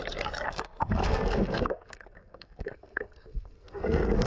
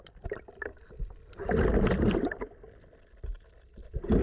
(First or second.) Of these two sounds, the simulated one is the first